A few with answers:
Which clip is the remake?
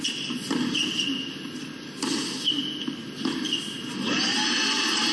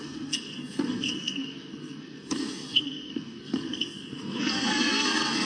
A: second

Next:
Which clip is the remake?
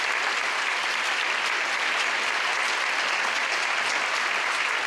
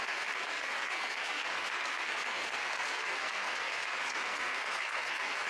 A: second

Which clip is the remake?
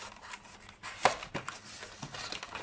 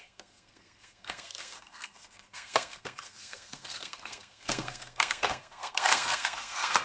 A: second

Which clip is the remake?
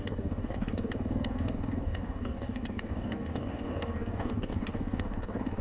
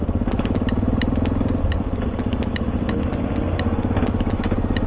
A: first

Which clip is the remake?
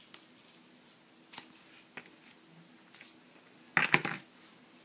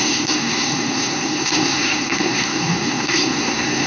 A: second